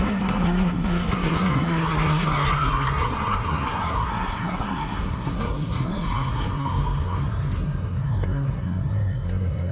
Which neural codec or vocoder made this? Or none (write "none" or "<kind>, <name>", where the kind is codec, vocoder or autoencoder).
codec, SNAC